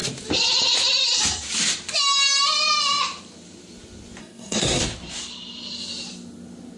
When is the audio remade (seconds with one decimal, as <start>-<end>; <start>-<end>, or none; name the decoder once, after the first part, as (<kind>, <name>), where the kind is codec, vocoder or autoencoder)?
4.2-4.8 (codec, SNAC)